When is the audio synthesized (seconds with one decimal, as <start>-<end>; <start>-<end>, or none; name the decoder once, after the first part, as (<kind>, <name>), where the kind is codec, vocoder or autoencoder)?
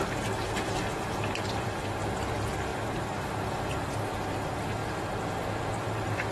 4.8-6.3 (vocoder, BigVGAN v2)